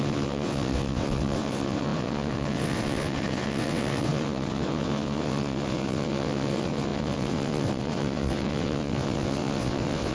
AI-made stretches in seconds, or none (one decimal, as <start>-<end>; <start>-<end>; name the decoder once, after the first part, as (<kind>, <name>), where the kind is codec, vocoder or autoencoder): 0.0-10.1 (vocoder, WaveNeXt)